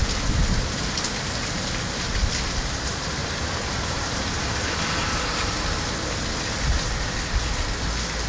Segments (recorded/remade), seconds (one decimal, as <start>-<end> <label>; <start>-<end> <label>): 0.0-3.2 recorded; 3.2-5.7 remade; 5.7-8.3 recorded